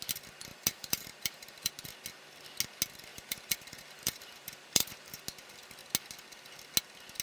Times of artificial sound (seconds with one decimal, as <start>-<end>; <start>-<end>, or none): 0.5-1.7; 3.1-5.2